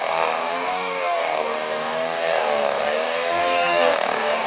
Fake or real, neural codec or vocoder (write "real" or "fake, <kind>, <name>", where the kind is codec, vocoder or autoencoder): fake, codec, DAC